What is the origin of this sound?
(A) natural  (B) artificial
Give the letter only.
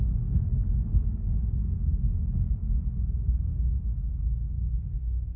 B